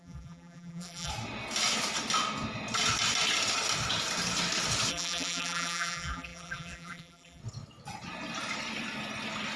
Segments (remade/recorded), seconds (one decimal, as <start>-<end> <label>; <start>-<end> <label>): 0.0-1.1 remade; 1.1-4.9 recorded; 4.9-7.4 remade; 7.4-9.6 recorded